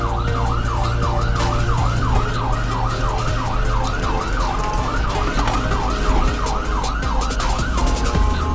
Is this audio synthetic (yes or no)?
no